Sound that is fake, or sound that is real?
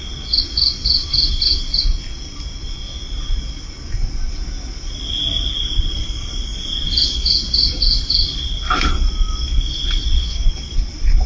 fake